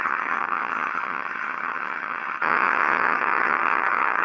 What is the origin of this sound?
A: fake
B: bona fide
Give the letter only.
A